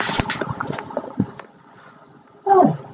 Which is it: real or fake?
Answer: fake